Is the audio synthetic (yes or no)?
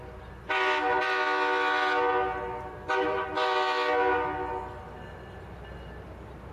no